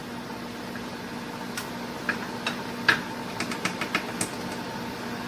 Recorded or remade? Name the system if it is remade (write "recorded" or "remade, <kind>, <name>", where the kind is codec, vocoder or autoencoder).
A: recorded